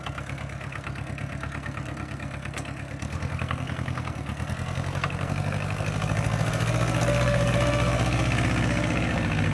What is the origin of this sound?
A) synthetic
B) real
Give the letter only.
A